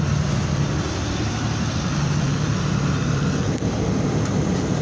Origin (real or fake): fake